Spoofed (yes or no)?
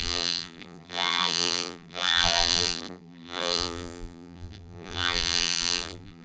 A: yes